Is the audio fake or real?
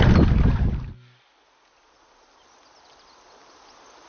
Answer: real